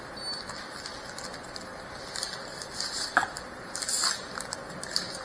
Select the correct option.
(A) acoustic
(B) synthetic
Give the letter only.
A